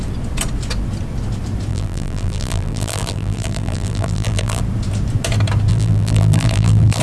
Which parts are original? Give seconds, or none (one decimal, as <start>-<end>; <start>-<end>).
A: 0.0-1.7; 4.6-5.7